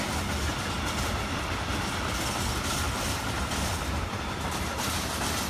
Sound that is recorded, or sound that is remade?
remade